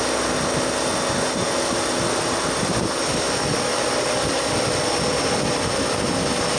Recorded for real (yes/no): yes